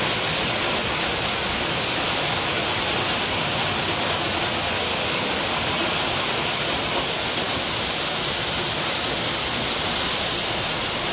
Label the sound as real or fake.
real